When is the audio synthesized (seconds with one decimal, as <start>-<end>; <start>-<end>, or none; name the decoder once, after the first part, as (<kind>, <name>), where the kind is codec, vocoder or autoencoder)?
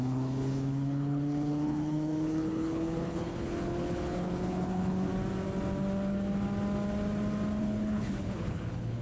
0.0-5.1 (codec, HILCodec); 7.6-9.0